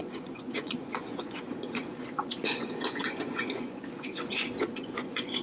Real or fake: fake